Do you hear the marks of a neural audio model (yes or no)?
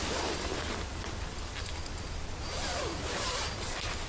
no